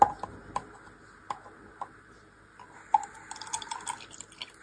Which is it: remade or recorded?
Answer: recorded